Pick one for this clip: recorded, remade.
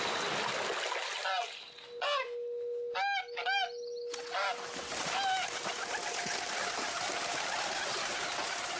recorded